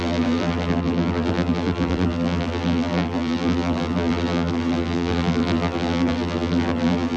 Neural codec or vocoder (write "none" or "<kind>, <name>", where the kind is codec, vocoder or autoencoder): vocoder, BigVGAN v2